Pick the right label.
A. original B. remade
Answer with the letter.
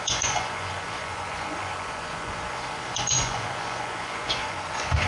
B